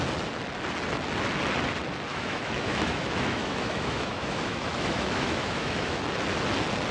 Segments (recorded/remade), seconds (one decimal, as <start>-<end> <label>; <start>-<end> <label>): 0.0-2.1 recorded; 2.1-6.0 remade; 6.0-6.9 recorded